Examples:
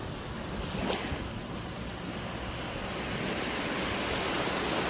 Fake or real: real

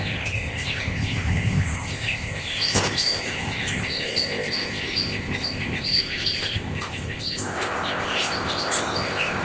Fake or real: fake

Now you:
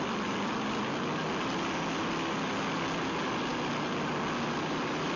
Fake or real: real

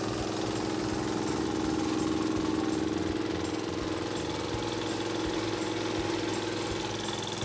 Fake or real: real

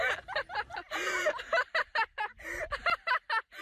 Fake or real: real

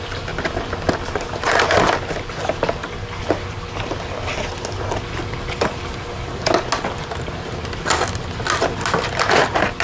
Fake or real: real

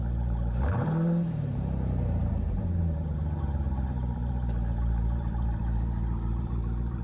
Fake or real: fake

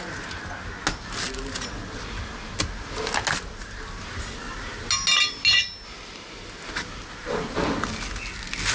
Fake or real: real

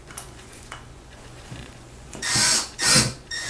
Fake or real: fake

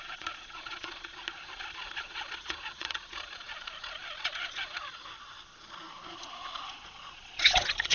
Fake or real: fake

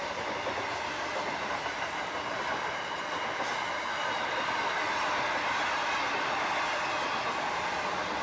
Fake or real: real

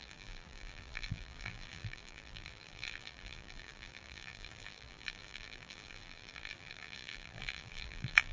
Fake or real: fake